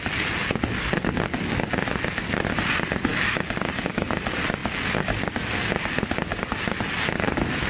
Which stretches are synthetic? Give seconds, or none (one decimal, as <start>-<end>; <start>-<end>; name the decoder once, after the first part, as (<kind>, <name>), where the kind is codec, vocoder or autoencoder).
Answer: none